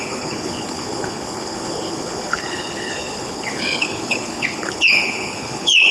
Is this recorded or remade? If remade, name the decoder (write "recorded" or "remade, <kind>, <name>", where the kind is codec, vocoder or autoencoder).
remade, codec, HILCodec